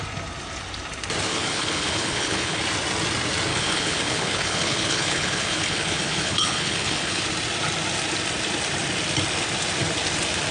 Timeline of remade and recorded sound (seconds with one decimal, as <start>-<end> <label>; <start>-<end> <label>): 0.0-1.3 recorded; 1.3-2.6 remade; 2.6-3.5 recorded; 3.5-7.2 remade; 7.2-10.5 recorded